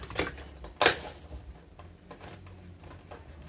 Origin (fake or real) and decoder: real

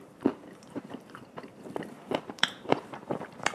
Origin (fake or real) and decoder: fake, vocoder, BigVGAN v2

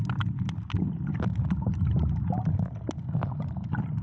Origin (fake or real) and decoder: real